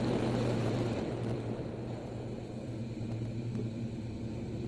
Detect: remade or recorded recorded